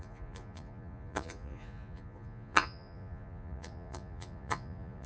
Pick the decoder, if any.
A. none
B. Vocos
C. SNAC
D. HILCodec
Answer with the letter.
B